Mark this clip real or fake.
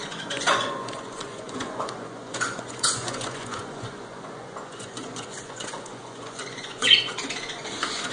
fake